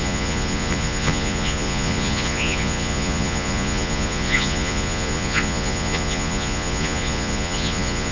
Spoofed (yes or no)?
yes